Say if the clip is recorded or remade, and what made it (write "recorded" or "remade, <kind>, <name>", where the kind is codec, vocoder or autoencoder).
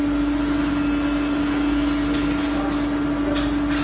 recorded